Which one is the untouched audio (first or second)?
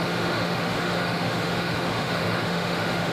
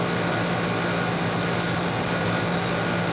second